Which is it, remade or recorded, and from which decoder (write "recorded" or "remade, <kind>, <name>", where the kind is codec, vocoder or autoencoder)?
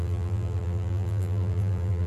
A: remade, vocoder, BigVGAN v2